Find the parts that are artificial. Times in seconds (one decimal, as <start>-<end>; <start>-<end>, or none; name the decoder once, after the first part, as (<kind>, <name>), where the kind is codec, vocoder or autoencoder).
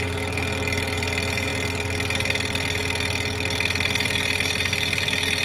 none